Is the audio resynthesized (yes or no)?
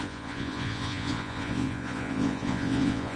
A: yes